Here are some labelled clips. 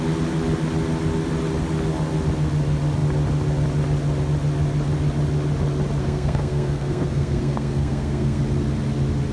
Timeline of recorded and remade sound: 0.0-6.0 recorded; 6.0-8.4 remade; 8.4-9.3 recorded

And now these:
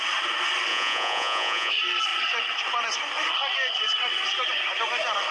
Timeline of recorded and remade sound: 0.0-0.7 recorded; 0.7-1.7 remade; 1.7-5.3 recorded

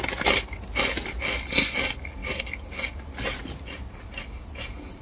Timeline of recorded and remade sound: 0.0-5.0 recorded